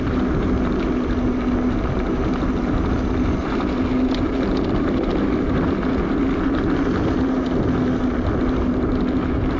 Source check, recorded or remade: recorded